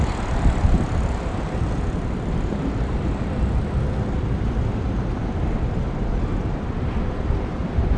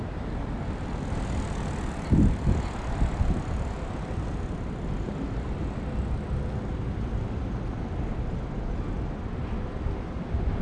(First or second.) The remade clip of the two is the first